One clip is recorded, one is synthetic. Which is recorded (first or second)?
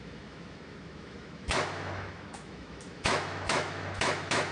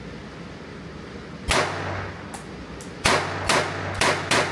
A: second